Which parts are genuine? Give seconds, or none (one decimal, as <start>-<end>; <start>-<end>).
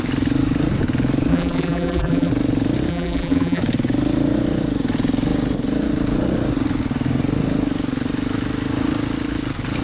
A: 0.0-1.3; 2.3-2.9; 3.6-9.8